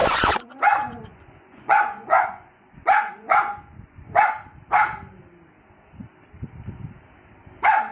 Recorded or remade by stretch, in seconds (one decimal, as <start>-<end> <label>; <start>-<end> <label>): 0.0-0.6 remade; 0.6-1.1 recorded; 1.1-4.3 remade; 4.3-7.9 recorded